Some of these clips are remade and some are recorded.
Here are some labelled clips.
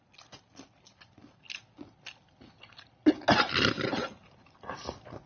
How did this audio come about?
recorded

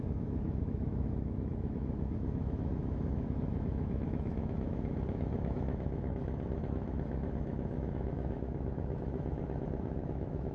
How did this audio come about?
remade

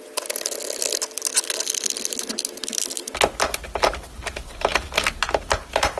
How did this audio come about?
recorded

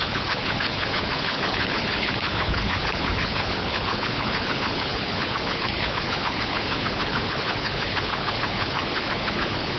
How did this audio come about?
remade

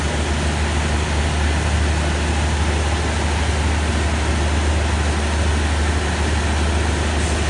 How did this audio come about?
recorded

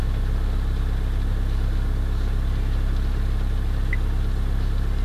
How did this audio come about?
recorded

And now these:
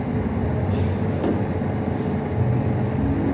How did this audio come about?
recorded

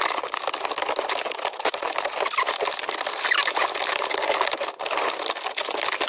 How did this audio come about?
recorded